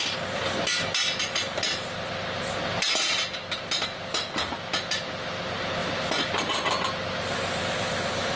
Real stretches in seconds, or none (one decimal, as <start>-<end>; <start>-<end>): 0.0-8.4